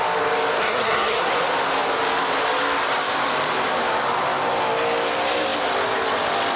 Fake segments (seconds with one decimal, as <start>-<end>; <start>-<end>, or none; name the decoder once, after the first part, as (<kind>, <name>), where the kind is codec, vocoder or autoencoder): 0.6-1.3 (codec, SNAC)